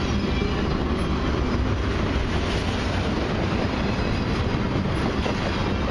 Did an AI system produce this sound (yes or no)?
no